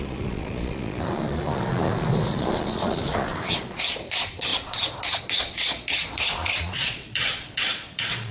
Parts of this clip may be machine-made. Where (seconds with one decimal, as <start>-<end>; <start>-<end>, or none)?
0.0-8.3